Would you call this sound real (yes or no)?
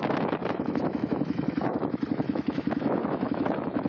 no